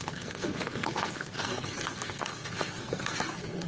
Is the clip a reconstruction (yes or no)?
yes